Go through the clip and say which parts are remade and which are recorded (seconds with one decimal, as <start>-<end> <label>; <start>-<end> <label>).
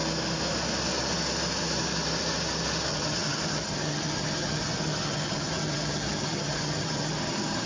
0.0-2.9 recorded; 2.9-7.7 remade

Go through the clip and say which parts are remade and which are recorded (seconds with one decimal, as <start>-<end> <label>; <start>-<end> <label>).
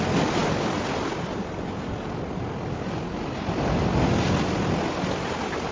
0.0-5.7 recorded